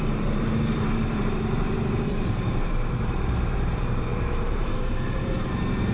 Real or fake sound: fake